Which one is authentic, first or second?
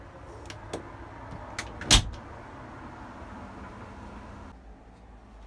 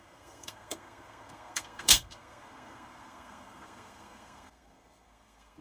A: first